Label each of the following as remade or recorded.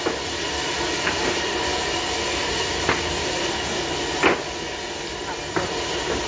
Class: recorded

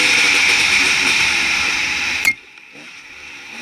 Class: remade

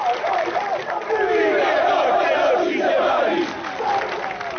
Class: recorded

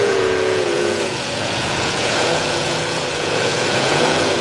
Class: remade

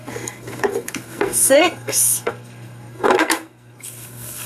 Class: remade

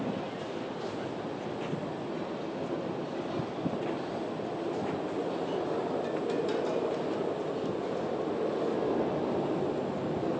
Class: recorded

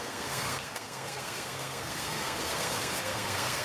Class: remade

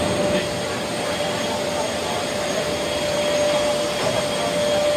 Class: recorded